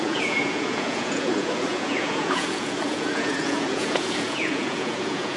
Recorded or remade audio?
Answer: remade